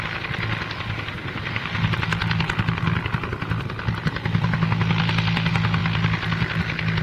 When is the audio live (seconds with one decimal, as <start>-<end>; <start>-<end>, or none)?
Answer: 0.0-7.0